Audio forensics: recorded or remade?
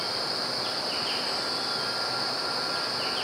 recorded